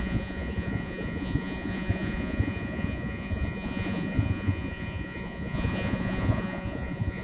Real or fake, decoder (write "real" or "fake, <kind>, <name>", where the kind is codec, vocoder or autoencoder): fake, vocoder, Vocos